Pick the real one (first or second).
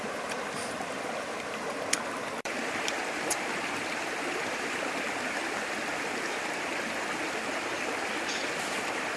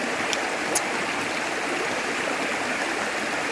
second